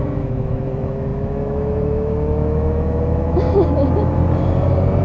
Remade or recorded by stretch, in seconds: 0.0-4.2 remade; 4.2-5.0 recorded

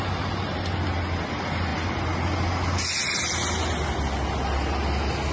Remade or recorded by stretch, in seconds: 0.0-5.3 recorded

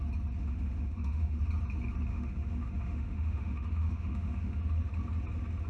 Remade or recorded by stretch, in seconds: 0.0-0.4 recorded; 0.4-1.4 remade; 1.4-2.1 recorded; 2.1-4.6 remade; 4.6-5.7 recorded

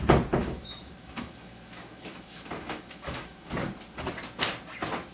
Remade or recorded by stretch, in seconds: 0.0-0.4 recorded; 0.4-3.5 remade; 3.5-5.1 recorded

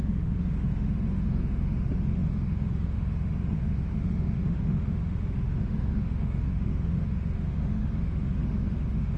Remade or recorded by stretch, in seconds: 0.0-9.2 remade

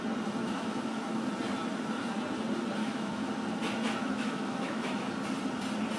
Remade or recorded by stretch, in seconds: 0.0-0.4 recorded; 0.4-1.3 remade; 1.3-2.8 recorded; 2.8-3.3 remade; 3.3-4.0 recorded; 4.0-5.1 remade; 5.1-6.0 recorded

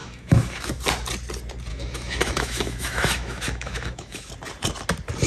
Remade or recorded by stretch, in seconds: 0.0-0.8 remade; 0.8-1.7 recorded; 1.7-4.3 remade; 4.3-5.3 recorded

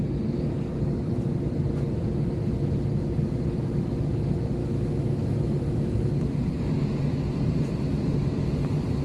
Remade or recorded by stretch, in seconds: 0.0-4.6 recorded; 4.6-6.1 remade; 6.1-9.0 recorded